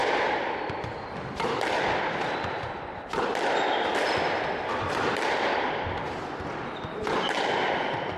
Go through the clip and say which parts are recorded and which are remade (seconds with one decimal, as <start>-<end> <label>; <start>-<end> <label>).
0.0-8.2 remade